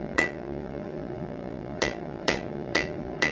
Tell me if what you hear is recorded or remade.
remade